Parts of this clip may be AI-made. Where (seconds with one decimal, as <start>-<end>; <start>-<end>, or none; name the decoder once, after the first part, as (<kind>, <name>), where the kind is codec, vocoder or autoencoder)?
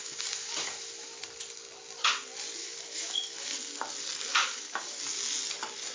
0.0-1.2 (autoencoder, DAC-VAE); 2.6-3.5; 4.4-5.0